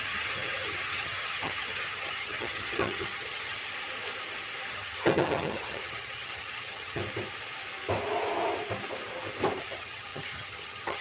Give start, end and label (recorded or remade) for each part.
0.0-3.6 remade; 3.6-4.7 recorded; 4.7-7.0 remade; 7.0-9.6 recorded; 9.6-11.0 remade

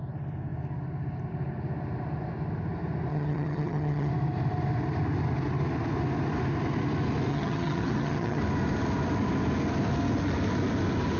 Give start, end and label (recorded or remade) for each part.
0.0-3.1 recorded; 3.1-4.1 remade; 4.1-7.3 recorded; 7.3-8.4 remade; 8.4-11.2 recorded

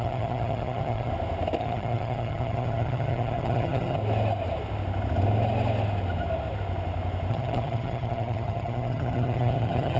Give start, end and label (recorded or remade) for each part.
0.0-1.1 remade; 1.1-1.6 recorded; 1.6-4.0 remade; 4.0-7.3 recorded; 7.3-10.0 remade